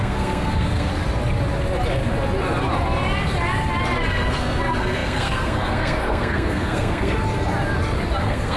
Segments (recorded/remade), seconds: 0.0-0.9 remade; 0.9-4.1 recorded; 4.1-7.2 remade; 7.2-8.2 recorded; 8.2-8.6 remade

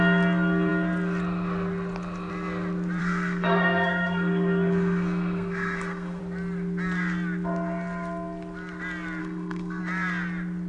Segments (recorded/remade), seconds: 0.0-3.0 recorded; 3.0-6.2 remade; 6.2-9.2 recorded; 9.2-9.8 remade; 9.8-10.7 recorded

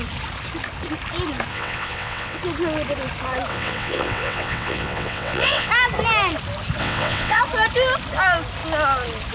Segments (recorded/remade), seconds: 0.0-1.5 recorded; 1.5-2.4 remade; 2.4-3.5 recorded; 3.5-5.7 remade; 5.7-6.8 recorded; 6.8-7.4 remade; 7.4-9.3 recorded

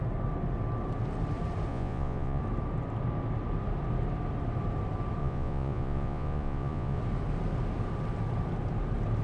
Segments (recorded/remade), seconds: 0.0-1.7 recorded; 1.7-2.4 remade; 2.4-5.2 recorded; 5.2-7.0 remade; 7.0-9.2 recorded

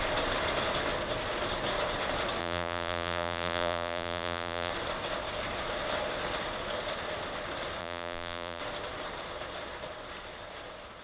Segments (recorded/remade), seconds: 0.0-2.4 recorded; 2.4-4.7 remade; 4.7-7.8 recorded; 7.8-8.6 remade; 8.6-11.0 recorded

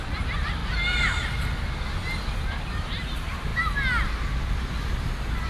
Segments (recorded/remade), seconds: 0.0-0.6 remade; 0.6-2.3 recorded; 2.3-3.5 remade; 3.5-4.9 recorded; 4.9-5.5 remade